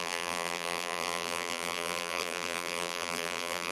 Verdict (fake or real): fake